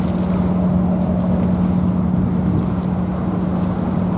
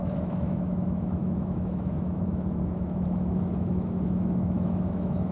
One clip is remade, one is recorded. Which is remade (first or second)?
second